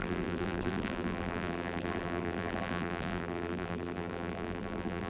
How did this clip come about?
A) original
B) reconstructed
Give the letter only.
B